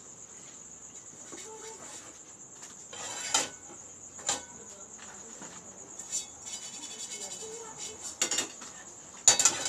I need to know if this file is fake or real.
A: real